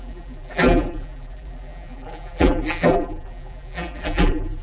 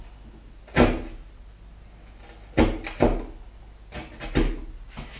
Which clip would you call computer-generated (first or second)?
first